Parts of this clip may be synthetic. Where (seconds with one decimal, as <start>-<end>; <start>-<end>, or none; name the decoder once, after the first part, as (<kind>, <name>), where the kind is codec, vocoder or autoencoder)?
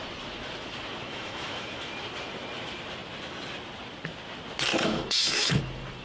1.1-1.9 (autoencoder, DAC-VAE); 4.7-5.6